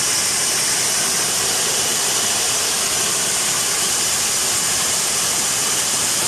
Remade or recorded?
recorded